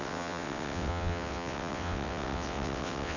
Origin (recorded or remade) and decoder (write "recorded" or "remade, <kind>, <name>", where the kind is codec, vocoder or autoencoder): remade, vocoder, WaveNeXt